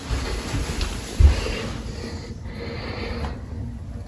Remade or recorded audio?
recorded